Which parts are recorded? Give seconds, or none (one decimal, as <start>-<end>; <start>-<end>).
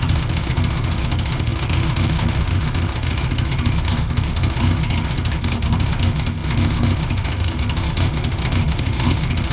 none